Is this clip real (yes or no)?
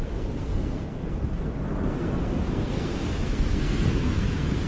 no